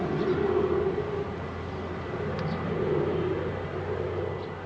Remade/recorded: recorded